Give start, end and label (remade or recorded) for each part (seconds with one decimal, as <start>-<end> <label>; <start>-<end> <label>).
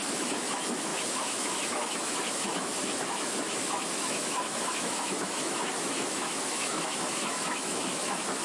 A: 0.0-8.4 remade